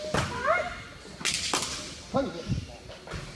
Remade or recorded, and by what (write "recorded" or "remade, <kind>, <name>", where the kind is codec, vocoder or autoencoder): recorded